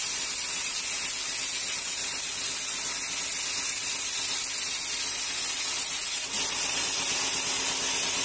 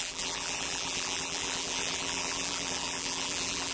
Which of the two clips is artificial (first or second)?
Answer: second